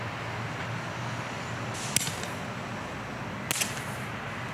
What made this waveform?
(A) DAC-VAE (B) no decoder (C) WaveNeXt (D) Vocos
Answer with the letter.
B